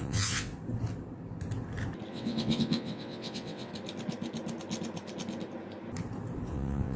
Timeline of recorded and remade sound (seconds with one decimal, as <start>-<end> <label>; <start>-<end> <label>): 0.0-0.5 remade; 0.5-2.1 recorded; 2.1-3.7 remade; 3.7-6.5 recorded; 6.5-7.0 remade